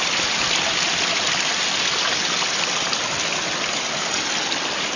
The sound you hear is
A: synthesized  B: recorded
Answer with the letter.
B